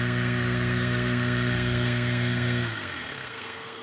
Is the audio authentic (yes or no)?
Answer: no